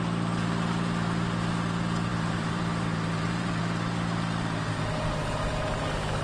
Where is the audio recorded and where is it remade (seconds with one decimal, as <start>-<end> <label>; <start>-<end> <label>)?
0.0-2.1 recorded; 2.1-3.6 remade; 3.6-6.2 recorded